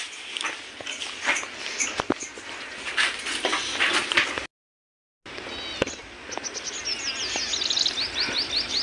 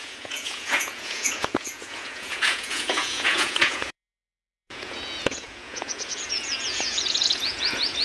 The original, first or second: first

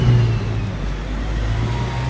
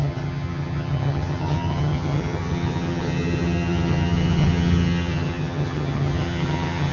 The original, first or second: first